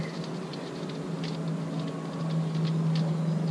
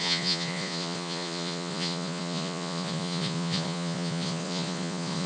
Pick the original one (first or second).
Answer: first